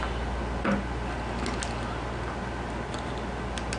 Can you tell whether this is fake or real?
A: real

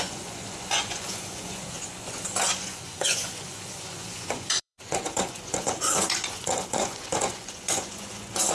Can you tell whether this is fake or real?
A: fake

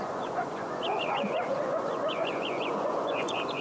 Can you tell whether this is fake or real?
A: fake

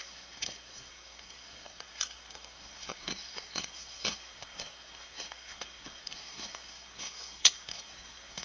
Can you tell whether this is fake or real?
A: fake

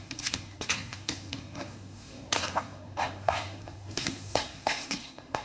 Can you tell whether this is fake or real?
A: fake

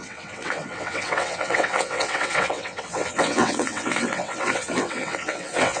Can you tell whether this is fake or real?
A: fake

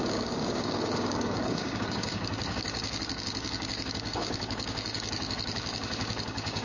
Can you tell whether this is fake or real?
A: fake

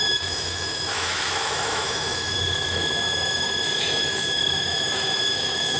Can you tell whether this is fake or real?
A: fake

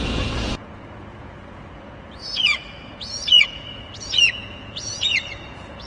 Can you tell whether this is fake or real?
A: fake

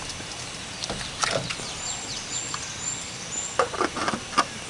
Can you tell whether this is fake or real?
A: real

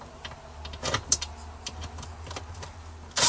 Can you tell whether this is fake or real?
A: real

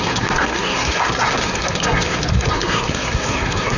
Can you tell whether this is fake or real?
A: fake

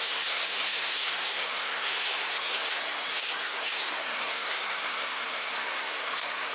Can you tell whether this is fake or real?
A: fake